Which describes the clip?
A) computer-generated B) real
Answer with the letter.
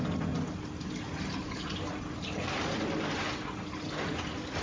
B